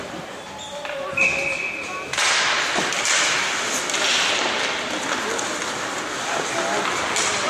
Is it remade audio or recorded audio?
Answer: recorded